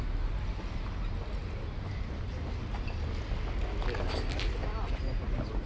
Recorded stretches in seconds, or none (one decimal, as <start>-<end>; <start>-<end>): 0.0-5.7